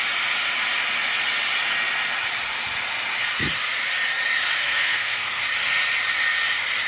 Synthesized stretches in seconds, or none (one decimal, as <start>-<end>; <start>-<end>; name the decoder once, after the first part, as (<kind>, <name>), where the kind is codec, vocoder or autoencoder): 4.6-5.4 (codec, SNAC)